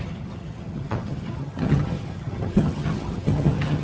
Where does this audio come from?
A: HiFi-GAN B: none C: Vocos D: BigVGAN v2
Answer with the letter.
A